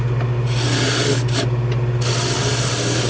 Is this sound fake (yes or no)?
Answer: no